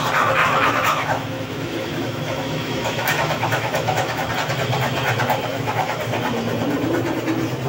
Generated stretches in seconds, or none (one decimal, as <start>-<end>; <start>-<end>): 0.4-4.3; 5.5-6.0